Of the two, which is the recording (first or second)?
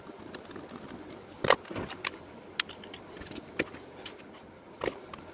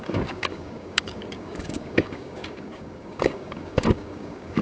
first